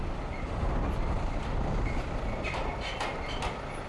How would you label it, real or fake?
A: real